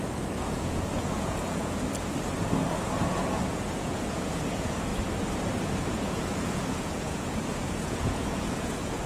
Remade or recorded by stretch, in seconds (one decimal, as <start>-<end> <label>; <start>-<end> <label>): 0.0-1.9 remade; 1.9-2.7 recorded; 2.7-4.9 remade; 4.9-5.8 recorded; 5.8-9.1 remade